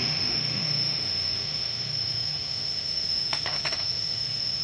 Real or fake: fake